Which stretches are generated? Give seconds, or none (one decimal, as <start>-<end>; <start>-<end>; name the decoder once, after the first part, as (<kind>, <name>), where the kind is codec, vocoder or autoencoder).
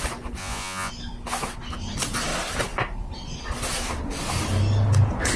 0.4-0.9 (vocoder, Vocos)